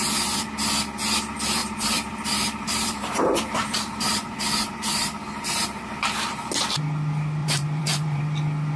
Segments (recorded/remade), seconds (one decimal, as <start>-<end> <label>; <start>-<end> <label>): 0.0-1.6 recorded; 1.6-6.5 remade; 6.5-7.4 recorded; 7.4-8.2 remade; 8.2-8.8 recorded